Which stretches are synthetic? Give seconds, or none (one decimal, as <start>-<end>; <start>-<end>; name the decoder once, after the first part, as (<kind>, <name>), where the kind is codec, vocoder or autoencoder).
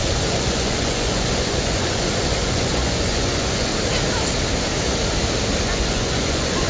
0.0-3.7 (vocoder, Vocos); 5.6-6.7